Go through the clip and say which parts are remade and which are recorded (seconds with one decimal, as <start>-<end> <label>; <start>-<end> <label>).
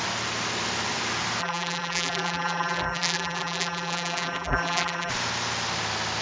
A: 0.0-1.4 recorded; 1.4-5.1 remade; 5.1-6.2 recorded